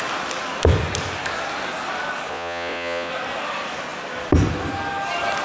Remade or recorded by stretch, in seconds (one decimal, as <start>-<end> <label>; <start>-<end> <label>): 0.0-2.3 recorded; 2.3-3.1 remade; 3.1-5.4 recorded